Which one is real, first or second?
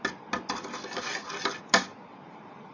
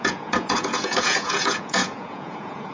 first